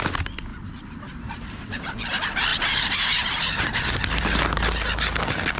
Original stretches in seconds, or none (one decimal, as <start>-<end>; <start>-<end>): 0.0-0.5; 1.8-2.5; 4.2-5.6